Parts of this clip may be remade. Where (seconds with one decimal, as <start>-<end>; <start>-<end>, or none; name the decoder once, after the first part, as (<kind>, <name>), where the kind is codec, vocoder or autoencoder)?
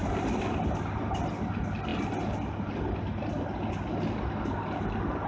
none